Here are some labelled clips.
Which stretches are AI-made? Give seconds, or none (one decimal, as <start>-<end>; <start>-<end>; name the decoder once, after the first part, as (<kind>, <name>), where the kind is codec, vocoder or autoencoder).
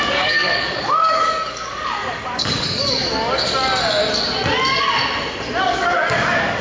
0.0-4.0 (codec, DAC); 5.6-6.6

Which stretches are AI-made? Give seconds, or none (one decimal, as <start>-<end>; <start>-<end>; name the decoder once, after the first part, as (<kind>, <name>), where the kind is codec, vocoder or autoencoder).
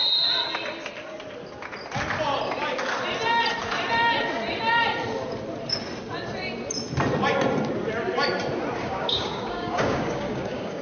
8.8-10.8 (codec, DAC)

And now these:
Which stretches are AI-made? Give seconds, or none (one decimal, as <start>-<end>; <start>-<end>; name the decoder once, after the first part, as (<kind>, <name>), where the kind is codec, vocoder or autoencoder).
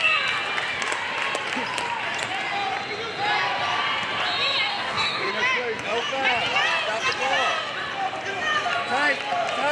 4.7-5.3 (codec, DAC)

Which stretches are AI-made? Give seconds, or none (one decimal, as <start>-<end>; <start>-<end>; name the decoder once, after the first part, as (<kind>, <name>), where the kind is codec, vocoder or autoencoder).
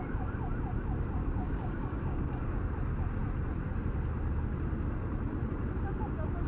1.2-2.7 (codec, DAC)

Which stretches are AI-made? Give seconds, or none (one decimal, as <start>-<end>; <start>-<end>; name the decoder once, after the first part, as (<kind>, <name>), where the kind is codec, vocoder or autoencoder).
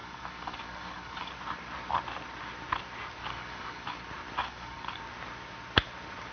0.0-1.3 (codec, DAC); 3.2-4.0; 4.4-5.0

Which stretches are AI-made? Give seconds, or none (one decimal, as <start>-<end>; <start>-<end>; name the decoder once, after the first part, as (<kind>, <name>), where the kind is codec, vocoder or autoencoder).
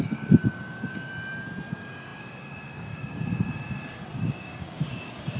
0.0-1.1 (codec, DAC); 1.7-5.4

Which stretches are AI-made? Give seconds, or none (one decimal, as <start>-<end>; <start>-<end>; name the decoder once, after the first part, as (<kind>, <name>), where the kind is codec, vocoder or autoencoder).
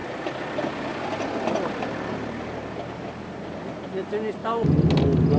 none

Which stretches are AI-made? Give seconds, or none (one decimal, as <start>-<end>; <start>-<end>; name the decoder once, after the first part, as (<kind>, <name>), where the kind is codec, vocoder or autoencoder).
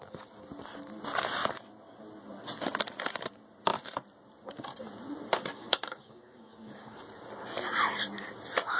5.5-7.0 (codec, DAC)